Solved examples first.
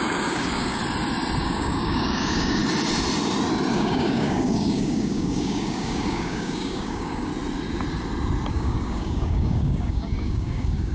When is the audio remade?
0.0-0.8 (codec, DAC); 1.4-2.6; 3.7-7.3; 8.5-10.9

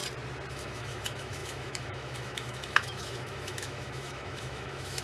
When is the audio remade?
0.5-5.0 (autoencoder, DAC-VAE)

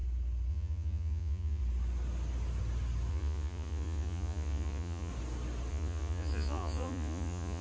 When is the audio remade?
0.5-1.6 (vocoder, Vocos); 3.1-5.1; 5.7-7.6

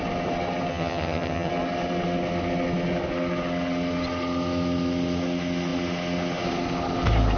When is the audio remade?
0.7-1.5 (vocoder, HiFi-GAN)